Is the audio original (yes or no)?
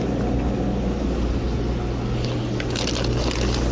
yes